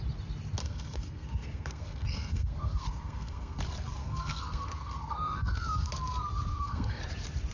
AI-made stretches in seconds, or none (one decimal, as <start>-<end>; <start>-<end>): 0.6-3.6; 4.0-5.9; 6.5-7.0